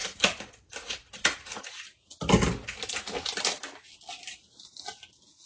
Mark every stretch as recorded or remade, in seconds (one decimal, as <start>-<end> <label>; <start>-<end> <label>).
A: 0.0-1.7 remade; 1.7-5.5 recorded